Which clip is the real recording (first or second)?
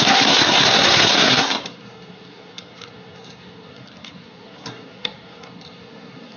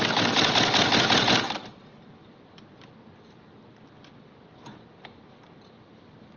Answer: second